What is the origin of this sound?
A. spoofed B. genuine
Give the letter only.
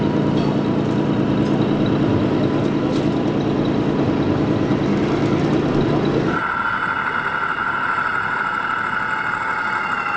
B